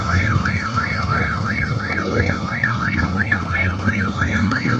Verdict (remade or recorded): remade